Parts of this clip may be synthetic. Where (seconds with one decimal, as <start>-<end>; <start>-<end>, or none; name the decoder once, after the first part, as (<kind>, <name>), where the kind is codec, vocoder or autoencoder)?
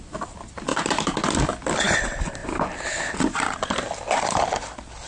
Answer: none